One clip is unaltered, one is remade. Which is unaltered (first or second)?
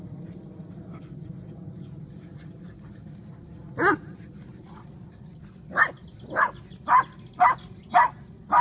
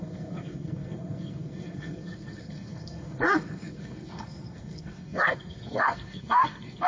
first